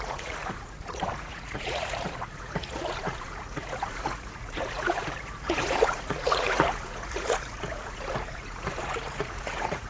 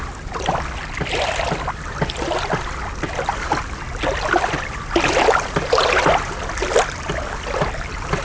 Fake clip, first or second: first